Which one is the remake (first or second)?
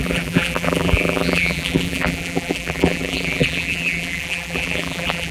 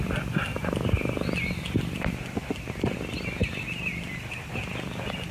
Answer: first